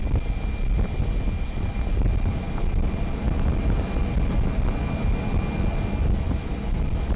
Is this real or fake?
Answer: real